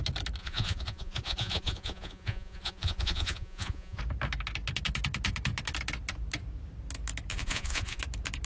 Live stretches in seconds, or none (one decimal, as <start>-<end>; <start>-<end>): 0.0-0.4; 4.0-7.3; 8.0-8.4